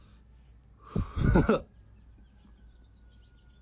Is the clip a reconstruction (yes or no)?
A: no